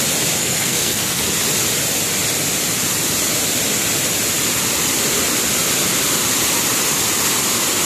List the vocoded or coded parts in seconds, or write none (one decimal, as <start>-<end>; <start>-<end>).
0.4-1.2